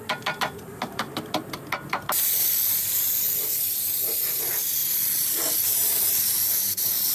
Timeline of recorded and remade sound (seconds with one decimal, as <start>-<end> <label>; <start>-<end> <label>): 0.0-4.8 recorded; 4.8-5.4 remade; 5.4-7.1 recorded